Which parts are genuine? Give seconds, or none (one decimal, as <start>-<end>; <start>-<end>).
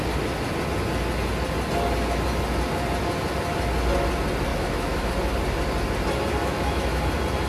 0.0-4.5; 5.1-6.4; 7.0-7.5